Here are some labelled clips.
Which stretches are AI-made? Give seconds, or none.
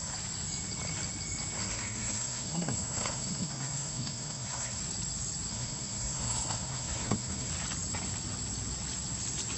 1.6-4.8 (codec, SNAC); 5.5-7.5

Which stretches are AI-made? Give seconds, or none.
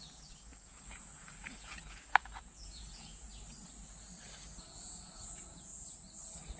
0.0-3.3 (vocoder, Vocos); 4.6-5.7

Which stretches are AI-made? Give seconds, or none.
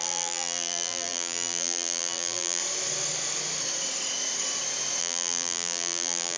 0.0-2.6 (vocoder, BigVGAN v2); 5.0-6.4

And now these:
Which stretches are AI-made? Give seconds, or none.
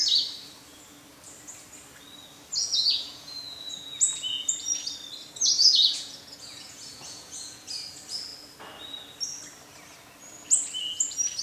2.6-4.0 (vocoder, Vocos); 5.6-7.9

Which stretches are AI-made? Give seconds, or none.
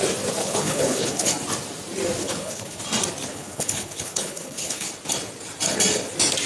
0.4-1.3 (codec, HILCodec); 2.2-2.8; 3.3-4.9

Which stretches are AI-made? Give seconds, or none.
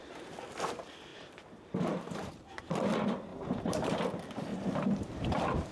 1.1-2.6 (vocoder, BigVGAN v2); 3.3-4.0; 4.5-5.7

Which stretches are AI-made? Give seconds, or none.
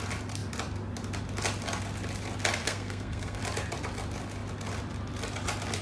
2.6-3.4 (codec, SNAC)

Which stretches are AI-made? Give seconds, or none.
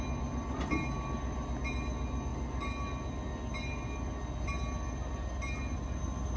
none